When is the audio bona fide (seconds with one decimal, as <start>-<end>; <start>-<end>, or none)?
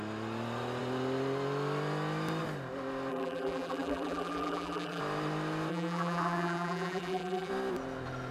0.0-3.1; 5.0-5.7; 7.5-8.3